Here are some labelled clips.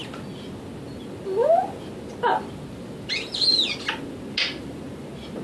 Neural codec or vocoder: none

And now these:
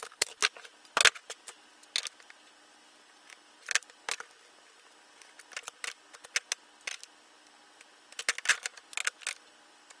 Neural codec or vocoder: none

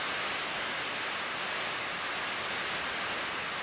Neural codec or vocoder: none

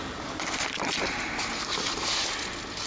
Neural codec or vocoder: none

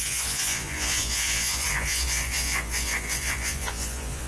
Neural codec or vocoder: vocoder, Vocos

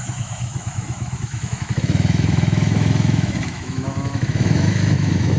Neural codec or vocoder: autoencoder, DAC-VAE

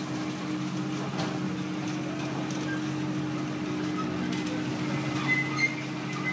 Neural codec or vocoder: none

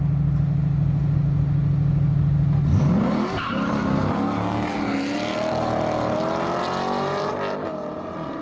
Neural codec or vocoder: none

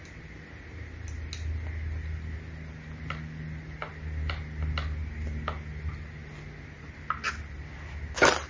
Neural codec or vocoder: none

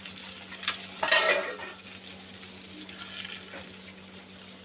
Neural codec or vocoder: none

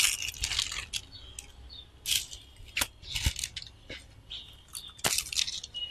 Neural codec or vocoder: none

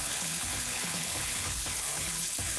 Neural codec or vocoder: codec, HILCodec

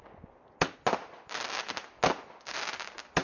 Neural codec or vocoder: none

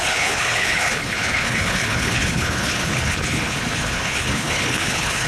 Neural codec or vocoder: codec, HILCodec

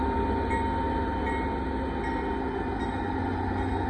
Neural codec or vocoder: none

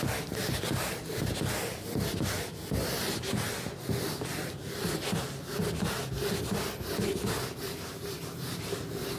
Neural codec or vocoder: none